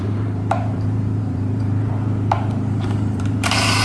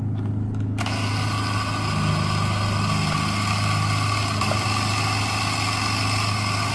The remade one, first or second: first